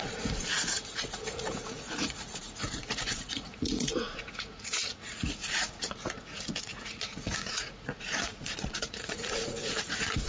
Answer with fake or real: fake